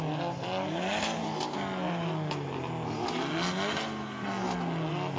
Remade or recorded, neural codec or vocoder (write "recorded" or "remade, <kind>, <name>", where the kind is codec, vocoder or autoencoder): recorded